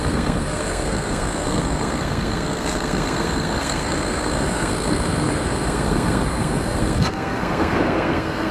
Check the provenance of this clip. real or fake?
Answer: fake